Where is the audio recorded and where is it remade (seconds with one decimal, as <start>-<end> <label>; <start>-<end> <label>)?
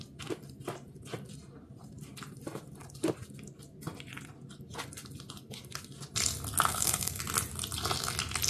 0.0-6.7 recorded; 6.7-7.2 remade; 7.2-8.5 recorded